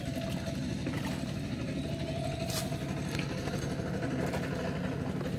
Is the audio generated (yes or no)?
no